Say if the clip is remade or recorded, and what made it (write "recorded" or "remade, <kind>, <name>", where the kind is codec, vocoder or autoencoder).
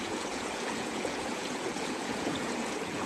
remade, vocoder, Vocos